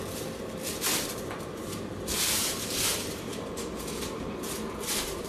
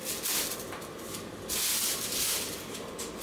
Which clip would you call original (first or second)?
second